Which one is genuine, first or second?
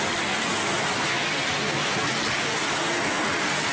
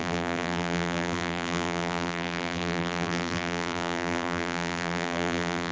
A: first